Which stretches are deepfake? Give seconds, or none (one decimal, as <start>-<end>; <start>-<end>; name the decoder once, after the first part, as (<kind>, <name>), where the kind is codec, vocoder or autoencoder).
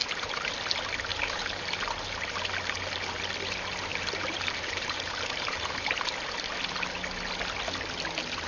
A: 0.0-0.6 (vocoder, BigVGAN v2); 1.1-1.6; 3.9-5.9